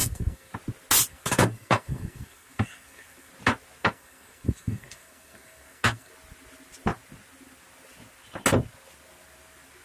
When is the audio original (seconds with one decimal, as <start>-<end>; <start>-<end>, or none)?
0.5-1.1; 3.3-3.8; 6.1-9.8